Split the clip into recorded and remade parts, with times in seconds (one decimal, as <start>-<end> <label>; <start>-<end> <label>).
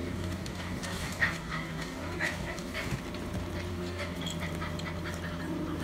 0.0-3.0 remade; 3.0-3.7 recorded; 3.7-4.2 remade; 4.2-5.8 recorded